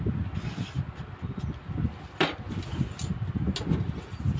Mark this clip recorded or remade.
recorded